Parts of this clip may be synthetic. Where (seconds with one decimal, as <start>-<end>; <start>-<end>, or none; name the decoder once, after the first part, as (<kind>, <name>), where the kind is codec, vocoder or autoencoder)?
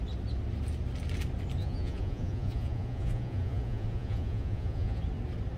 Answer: 1.6-5.0 (vocoder, Vocos)